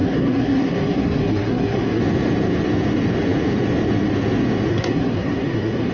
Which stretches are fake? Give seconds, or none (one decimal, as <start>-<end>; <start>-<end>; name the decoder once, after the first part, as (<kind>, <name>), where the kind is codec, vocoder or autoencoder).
0.0-2.0 (codec, SNAC); 4.7-5.9